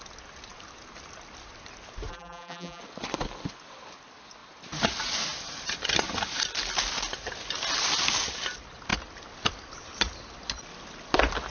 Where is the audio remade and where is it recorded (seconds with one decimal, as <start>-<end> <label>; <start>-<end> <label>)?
0.0-2.1 recorded; 2.1-2.8 remade; 2.8-11.5 recorded